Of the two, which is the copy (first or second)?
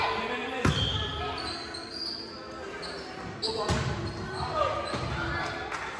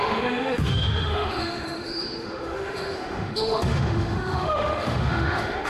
second